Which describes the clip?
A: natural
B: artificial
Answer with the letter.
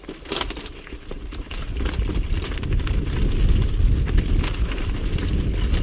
A